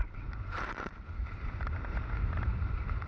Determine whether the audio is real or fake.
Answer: fake